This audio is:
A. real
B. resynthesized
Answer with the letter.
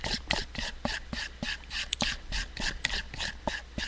A